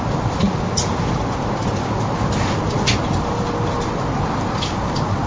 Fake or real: real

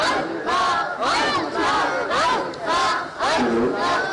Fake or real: real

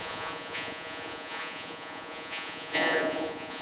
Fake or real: fake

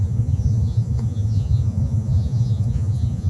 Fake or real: fake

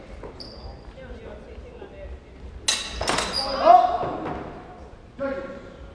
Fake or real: real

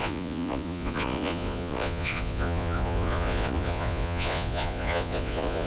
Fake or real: fake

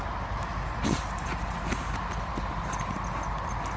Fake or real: real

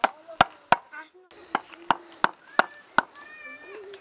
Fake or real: real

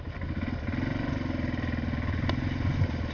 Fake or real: real